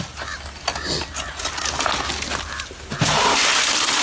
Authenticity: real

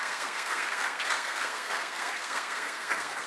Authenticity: fake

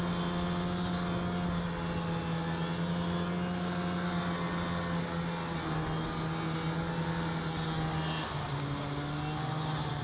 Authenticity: real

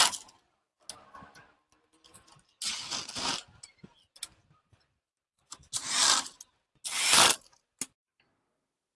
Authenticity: real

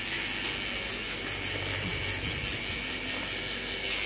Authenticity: real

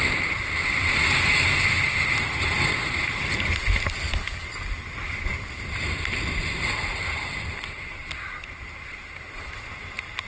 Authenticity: real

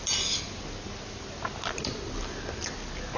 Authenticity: real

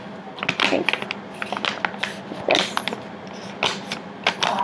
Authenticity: real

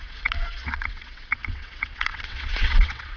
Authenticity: fake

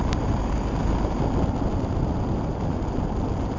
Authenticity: real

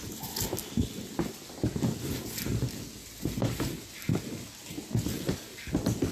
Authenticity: real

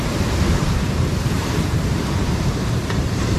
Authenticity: fake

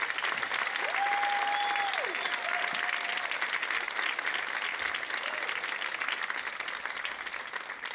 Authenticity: real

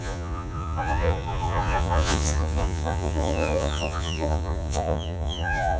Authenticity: fake